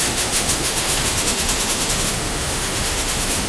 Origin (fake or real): fake